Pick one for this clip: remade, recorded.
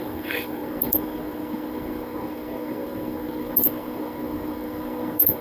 remade